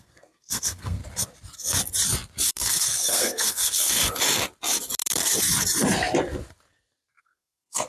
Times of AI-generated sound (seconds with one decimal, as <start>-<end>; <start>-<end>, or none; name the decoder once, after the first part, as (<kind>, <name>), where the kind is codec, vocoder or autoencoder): 0.0-1.0 (codec, SNAC); 2.5-4.0; 7.2-7.9